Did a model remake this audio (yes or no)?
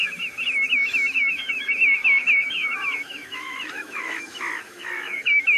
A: yes